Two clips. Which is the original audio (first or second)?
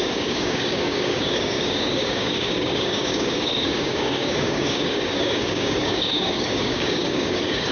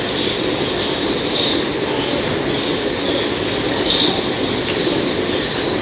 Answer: second